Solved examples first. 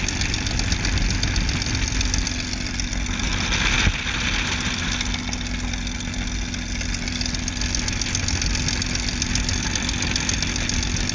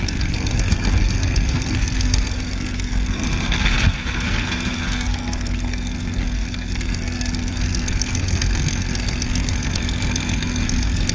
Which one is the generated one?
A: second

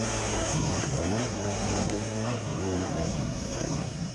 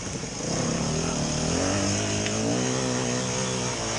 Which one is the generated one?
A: first